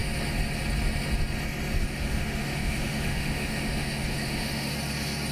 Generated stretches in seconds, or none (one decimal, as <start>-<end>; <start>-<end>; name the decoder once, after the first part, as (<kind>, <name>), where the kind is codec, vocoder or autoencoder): 1.8-4.7 (autoencoder, DAC-VAE)

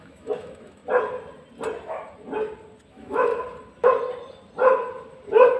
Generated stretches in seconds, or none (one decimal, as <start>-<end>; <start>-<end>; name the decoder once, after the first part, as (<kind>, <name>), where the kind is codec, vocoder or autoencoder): 0.0-0.8 (autoencoder, DAC-VAE); 2.9-3.3

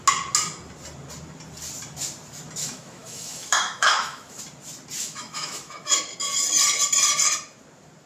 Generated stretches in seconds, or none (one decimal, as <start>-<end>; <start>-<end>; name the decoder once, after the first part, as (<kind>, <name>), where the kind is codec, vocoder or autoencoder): 2.6-4.4 (autoencoder, DAC-VAE); 5.0-5.9

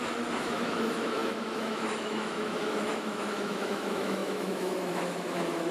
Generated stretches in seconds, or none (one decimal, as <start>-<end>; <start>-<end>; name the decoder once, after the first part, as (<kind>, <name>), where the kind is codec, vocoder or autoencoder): 0.0-5.7 (autoencoder, DAC-VAE)

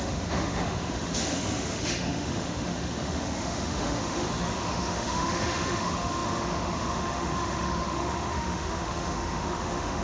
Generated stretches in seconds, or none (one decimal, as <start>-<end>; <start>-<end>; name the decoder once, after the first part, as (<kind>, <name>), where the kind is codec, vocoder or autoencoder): 0.0-10.0 (autoencoder, DAC-VAE)

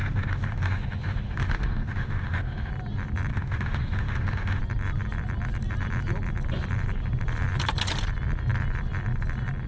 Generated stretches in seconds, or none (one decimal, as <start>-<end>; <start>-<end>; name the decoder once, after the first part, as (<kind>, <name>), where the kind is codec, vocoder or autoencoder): 0.0-2.7 (autoencoder, DAC-VAE); 3.3-4.6

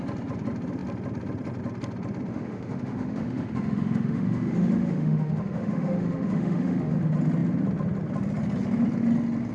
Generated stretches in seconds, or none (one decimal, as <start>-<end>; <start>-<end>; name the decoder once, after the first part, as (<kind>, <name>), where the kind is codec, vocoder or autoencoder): 2.3-7.0 (autoencoder, DAC-VAE)